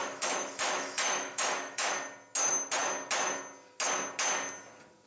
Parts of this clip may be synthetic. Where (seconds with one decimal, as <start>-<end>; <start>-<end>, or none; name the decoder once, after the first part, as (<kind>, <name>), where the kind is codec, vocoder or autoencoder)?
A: 0.0-1.9 (autoencoder, DAC-VAE)